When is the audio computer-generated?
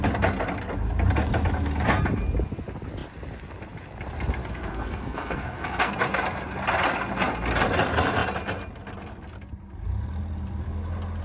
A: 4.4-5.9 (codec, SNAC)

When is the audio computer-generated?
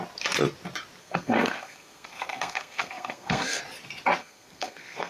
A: 1.0-3.6 (codec, SNAC); 4.2-5.1